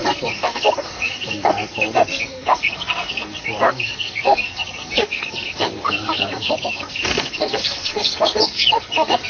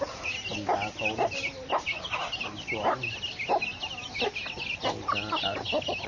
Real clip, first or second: second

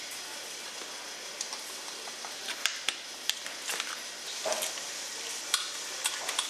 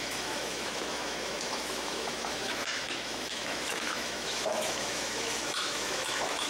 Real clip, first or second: first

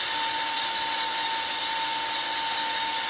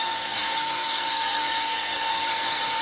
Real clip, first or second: first